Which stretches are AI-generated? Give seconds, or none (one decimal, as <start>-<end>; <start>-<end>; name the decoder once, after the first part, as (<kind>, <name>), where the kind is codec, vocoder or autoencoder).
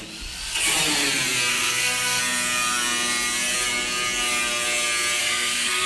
1.5-2.2 (codec, SNAC); 5.2-5.9